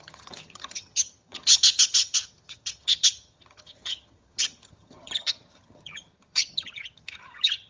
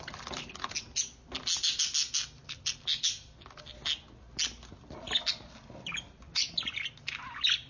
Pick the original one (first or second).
second